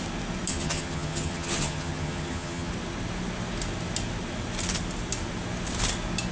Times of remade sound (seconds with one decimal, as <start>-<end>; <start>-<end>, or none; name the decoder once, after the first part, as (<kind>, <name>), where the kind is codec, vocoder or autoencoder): 0.5-2.7 (vocoder, HiFi-GAN)